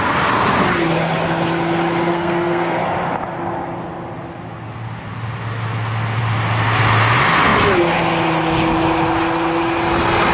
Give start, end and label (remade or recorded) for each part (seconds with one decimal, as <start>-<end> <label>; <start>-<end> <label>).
0.0-2.1 recorded; 2.1-2.8 remade; 2.8-10.3 recorded